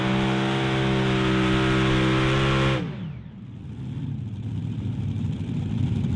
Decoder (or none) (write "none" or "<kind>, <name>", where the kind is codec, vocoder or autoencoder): none